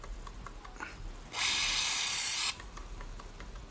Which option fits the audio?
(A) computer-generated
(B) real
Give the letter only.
B